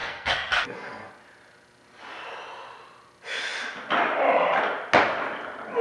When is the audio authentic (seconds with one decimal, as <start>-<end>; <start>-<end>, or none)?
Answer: 1.1-5.8